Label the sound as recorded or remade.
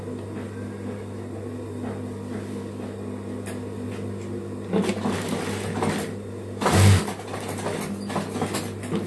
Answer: recorded